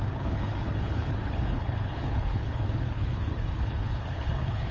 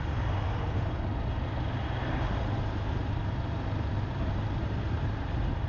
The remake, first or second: first